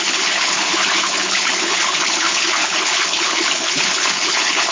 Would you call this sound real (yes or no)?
no